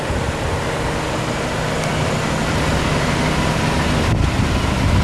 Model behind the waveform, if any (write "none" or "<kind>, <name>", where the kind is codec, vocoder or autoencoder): none